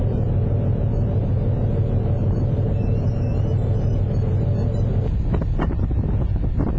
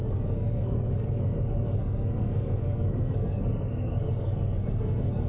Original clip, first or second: first